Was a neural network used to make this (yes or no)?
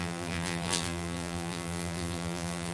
yes